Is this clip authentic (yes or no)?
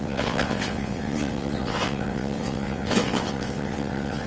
no